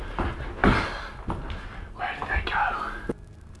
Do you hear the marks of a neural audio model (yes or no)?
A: no